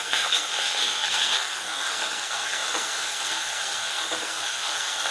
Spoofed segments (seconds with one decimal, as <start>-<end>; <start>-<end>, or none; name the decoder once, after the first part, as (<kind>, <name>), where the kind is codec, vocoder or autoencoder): 0.0-5.1 (codec, SNAC)